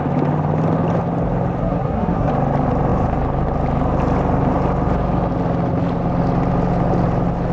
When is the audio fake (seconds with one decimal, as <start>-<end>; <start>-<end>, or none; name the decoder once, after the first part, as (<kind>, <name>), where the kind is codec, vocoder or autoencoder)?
1.6-2.3 (codec, SNAC)